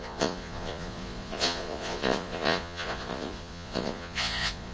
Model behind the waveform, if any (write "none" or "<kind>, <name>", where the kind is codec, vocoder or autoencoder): vocoder, Vocos